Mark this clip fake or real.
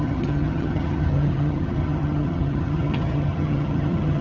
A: fake